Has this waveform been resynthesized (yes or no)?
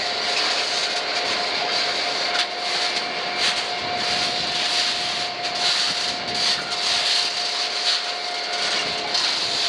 no